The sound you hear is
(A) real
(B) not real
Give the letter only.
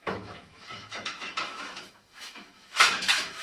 B